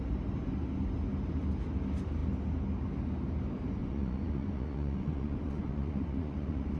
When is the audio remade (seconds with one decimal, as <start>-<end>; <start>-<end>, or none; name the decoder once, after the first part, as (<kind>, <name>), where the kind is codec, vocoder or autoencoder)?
3.8-6.8 (vocoder, Vocos)